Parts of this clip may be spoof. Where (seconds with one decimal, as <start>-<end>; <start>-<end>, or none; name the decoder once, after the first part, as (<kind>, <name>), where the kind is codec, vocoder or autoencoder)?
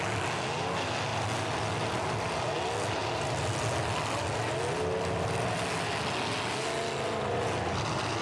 none